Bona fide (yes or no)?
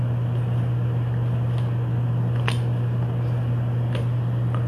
yes